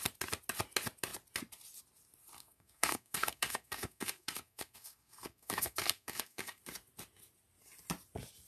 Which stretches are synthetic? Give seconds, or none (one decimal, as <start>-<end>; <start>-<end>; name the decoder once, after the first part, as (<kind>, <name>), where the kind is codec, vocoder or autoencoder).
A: 2.4-6.6 (codec, SNAC)